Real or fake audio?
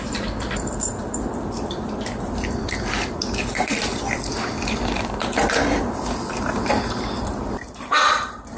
fake